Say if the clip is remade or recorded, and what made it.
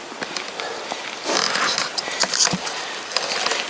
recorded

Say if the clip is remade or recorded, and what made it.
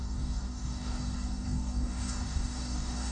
remade, codec, DAC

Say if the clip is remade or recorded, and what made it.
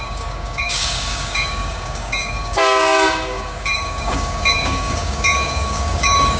remade, codec, DAC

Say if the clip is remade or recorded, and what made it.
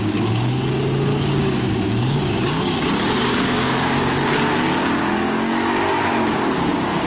remade, codec, DAC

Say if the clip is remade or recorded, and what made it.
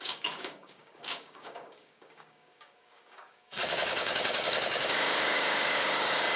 remade, codec, DAC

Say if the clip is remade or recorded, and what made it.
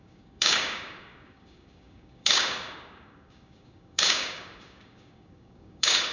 remade, codec, DAC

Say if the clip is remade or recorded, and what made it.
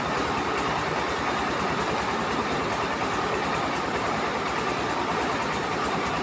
recorded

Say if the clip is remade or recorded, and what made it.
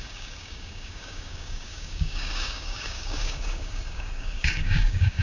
remade, codec, DAC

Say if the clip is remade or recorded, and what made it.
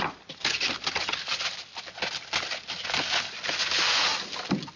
recorded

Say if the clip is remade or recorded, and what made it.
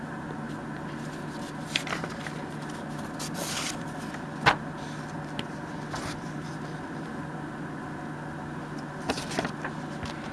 recorded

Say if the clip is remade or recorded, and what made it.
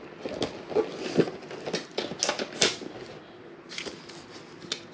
recorded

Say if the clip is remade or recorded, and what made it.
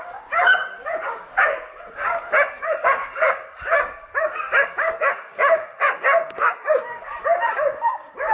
remade, codec, DAC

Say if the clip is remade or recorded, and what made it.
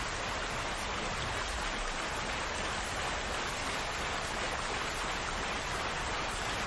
recorded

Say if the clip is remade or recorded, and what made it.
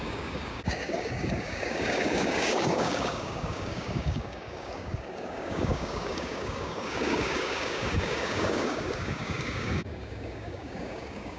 remade, codec, DAC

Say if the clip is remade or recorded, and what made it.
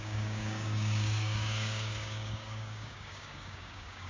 remade, codec, DAC